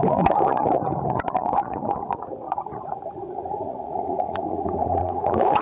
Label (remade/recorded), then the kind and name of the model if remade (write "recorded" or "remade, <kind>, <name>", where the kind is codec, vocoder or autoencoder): remade, vocoder, Vocos